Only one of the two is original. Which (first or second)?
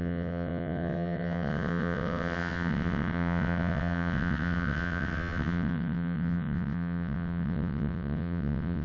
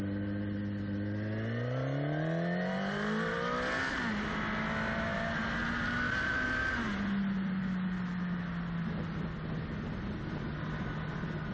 second